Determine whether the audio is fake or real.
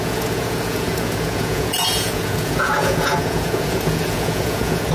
fake